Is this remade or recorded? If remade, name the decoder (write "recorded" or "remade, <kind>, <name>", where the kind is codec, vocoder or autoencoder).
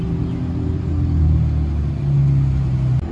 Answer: recorded